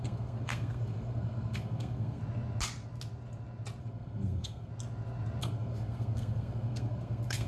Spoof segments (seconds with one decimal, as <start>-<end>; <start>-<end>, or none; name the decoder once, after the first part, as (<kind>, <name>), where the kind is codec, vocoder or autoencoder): 0.0-2.2 (codec, SNAC); 3.8-4.7; 5.4-7.5